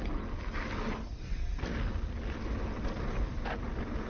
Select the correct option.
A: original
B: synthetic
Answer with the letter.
A